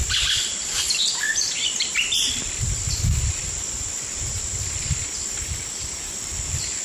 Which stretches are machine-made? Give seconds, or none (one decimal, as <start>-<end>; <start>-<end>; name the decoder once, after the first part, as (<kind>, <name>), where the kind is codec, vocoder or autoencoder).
0.0-6.8 (vocoder, BigVGAN v2)

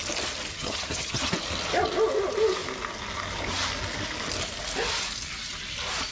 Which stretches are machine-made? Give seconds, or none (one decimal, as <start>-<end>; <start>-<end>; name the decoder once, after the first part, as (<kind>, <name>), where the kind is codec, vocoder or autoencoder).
0.5-1.3 (vocoder, HiFi-GAN)

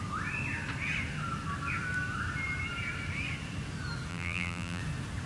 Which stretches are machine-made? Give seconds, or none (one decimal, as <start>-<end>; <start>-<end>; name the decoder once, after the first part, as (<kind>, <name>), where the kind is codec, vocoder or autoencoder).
4.1-4.8 (vocoder, BigVGAN v2)

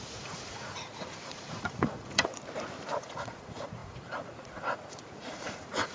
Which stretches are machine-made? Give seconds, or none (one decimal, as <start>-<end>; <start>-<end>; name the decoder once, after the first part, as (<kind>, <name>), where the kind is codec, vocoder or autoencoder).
0.0-2.3 (vocoder, Vocos); 3.0-5.9